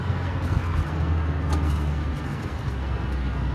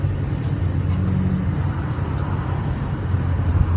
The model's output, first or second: first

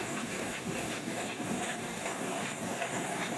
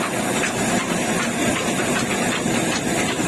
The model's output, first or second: first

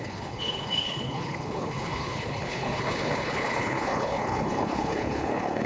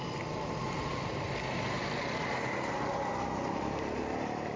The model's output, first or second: first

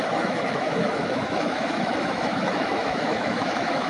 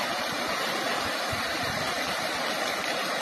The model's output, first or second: first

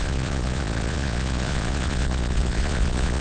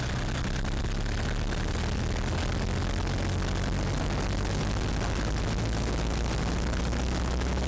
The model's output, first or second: first